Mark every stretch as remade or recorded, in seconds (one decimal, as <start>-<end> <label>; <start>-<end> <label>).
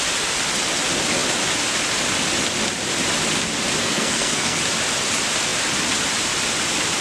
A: 0.0-3.8 recorded; 3.8-4.6 remade; 4.6-7.0 recorded